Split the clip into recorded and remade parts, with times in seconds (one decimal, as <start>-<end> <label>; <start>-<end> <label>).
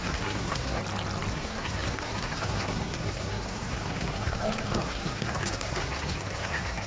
0.0-0.8 remade; 0.8-1.3 recorded; 1.3-6.9 remade